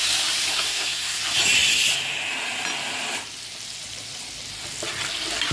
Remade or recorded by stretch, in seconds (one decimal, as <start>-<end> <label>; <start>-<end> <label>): 0.0-0.5 recorded; 0.5-1.2 remade; 1.2-5.5 recorded

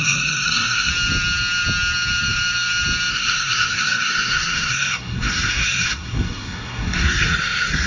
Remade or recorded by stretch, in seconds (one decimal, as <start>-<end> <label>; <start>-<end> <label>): 0.0-0.9 remade; 0.9-3.1 recorded; 3.1-7.9 remade

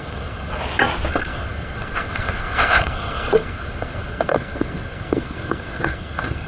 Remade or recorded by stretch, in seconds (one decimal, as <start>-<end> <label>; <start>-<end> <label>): 0.0-0.6 remade; 0.6-1.1 recorded; 1.1-6.5 remade

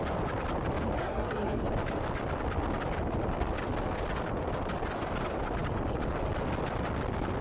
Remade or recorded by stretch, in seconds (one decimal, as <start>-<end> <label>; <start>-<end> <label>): 0.0-1.0 recorded; 1.0-1.6 remade; 1.6-7.4 recorded

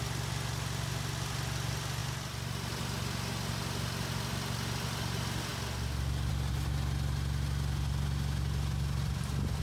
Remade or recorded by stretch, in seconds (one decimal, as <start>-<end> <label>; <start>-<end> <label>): 0.0-9.6 recorded

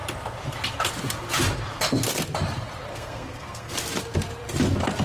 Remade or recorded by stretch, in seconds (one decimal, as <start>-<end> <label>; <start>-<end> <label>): 0.0-2.9 recorded; 2.9-3.7 remade; 3.7-5.0 recorded